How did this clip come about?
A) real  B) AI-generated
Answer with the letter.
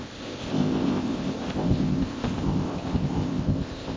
B